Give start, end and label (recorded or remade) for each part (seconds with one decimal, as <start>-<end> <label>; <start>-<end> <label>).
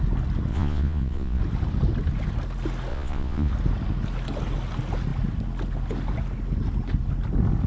0.0-0.5 recorded; 0.5-1.4 remade; 1.4-2.9 recorded; 2.9-3.5 remade; 3.5-7.7 recorded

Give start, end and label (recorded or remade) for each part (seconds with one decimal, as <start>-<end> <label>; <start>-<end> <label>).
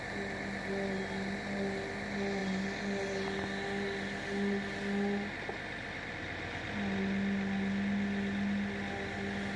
0.0-9.6 recorded